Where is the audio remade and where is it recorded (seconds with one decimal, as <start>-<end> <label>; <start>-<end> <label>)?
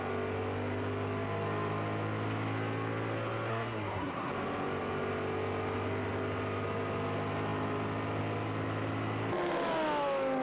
0.0-3.5 recorded; 3.5-4.3 remade; 4.3-10.4 recorded